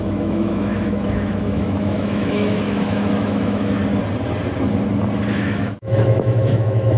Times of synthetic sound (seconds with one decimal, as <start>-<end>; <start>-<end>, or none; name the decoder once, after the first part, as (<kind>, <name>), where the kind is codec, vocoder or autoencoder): 0.0-3.8 (autoencoder, DAC-VAE); 5.3-7.0